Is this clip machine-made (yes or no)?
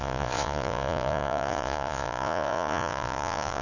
yes